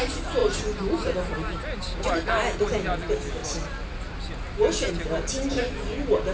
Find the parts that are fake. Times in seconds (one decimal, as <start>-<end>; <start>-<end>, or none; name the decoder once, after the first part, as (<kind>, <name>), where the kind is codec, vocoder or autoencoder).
none